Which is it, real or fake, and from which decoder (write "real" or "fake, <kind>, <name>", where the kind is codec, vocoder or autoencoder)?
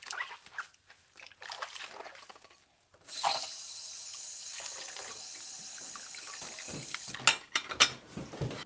real